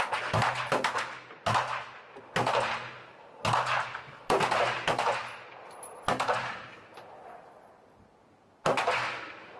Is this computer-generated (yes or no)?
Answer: no